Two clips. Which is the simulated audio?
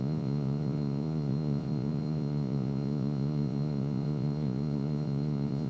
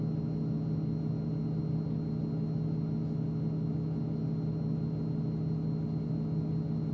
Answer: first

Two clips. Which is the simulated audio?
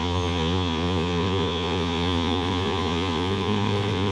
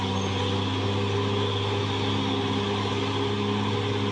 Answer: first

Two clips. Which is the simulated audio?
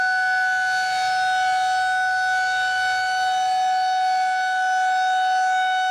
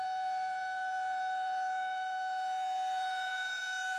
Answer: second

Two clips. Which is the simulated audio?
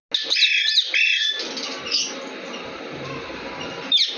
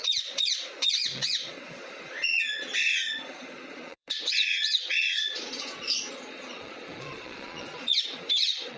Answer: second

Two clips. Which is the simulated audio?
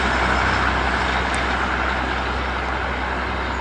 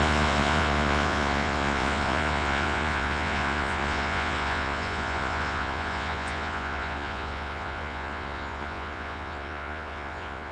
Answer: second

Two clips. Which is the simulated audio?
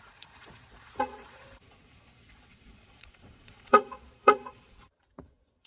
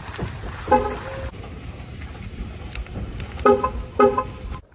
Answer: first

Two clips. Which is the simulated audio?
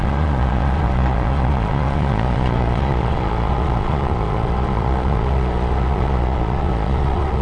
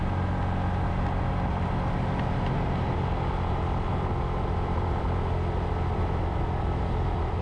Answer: first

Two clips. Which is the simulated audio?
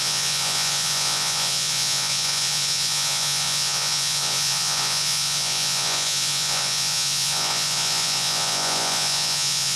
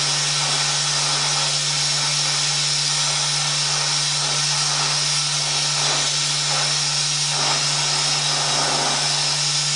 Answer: first